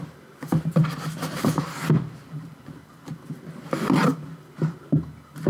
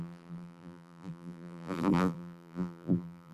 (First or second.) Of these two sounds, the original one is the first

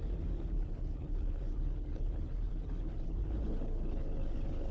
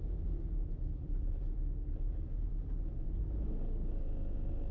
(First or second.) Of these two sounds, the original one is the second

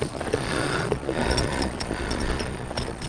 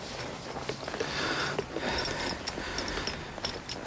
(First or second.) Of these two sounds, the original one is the second